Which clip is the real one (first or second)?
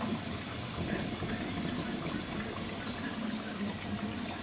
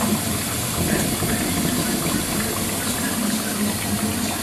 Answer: second